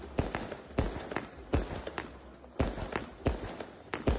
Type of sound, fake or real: real